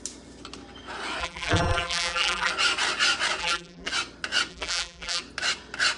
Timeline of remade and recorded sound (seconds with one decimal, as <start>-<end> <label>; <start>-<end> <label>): 0.0-1.2 recorded; 1.2-2.5 remade; 2.5-3.4 recorded; 3.4-3.9 remade; 3.9-4.5 recorded; 4.5-5.2 remade; 5.2-6.0 recorded